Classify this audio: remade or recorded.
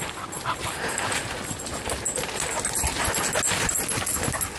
recorded